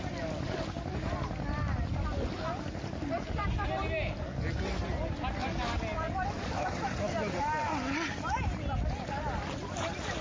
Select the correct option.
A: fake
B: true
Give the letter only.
B